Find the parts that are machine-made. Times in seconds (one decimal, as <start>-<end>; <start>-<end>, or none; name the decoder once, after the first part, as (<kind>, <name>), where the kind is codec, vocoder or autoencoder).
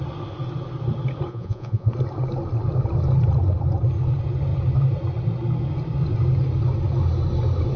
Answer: 1.3-1.9 (vocoder, Vocos)